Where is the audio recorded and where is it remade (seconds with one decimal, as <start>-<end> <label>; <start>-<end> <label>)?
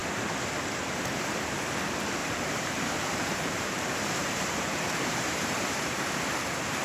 0.0-2.2 recorded; 2.2-6.2 remade; 6.2-6.8 recorded